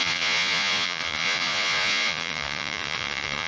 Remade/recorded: remade